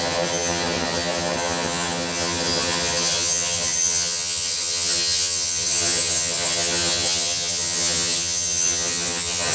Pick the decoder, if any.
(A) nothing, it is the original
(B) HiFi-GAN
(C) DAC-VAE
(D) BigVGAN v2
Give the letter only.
B